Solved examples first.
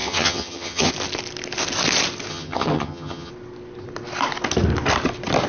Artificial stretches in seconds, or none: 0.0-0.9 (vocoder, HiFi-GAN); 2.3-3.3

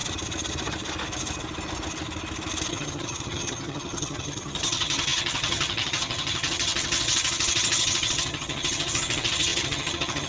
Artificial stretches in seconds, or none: 2.7-10.3 (vocoder, HiFi-GAN)

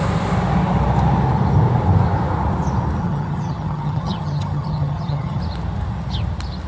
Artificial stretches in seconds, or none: 3.0-5.4 (vocoder, HiFi-GAN)

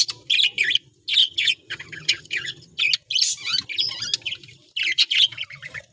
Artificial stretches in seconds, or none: 1.2-2.8 (vocoder, HiFi-GAN)

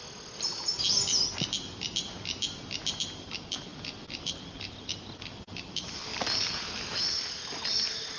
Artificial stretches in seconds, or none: none

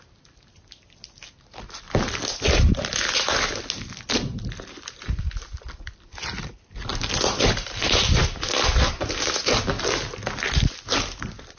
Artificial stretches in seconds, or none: none

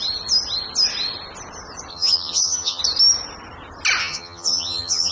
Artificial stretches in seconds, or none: 1.9-2.8 (vocoder, HiFi-GAN); 4.0-5.1